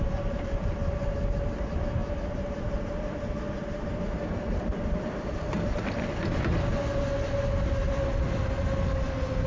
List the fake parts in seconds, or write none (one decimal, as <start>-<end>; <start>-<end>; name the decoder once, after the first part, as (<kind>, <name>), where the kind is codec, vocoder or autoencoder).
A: 2.0-3.9 (vocoder, BigVGAN v2)